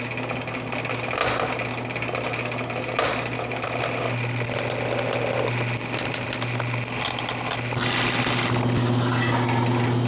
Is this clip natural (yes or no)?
yes